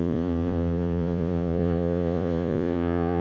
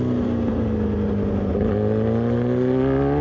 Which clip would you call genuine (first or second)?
second